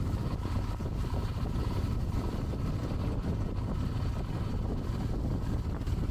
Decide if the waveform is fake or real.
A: fake